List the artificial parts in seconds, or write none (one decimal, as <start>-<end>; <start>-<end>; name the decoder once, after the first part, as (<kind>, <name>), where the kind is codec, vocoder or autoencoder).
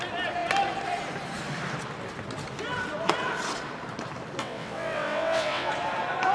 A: 4.4-5.7 (vocoder, WaveNeXt)